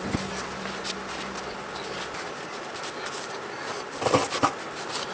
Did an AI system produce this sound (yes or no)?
no